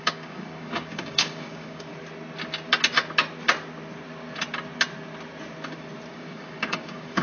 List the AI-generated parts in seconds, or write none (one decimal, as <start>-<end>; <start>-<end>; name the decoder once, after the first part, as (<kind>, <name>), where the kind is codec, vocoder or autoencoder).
0.0-1.9 (codec, DAC); 6.1-7.2